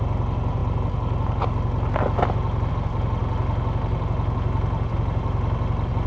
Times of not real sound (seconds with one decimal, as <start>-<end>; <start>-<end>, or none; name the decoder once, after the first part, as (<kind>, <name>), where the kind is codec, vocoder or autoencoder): none